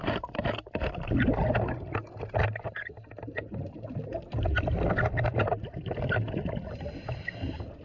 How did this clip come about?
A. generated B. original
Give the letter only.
B